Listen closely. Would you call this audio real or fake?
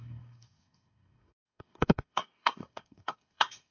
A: fake